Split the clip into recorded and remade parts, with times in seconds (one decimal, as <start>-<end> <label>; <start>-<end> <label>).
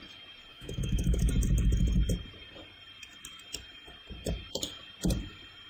0.0-0.5 recorded; 0.5-1.3 remade; 1.3-5.7 recorded